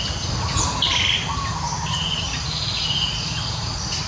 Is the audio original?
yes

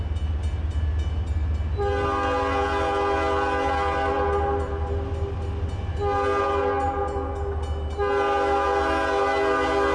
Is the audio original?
yes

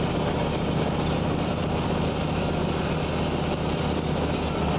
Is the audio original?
yes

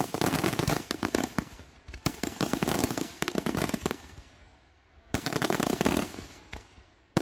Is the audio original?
no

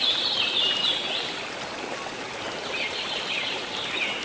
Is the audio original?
yes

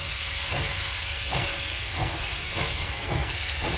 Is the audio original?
no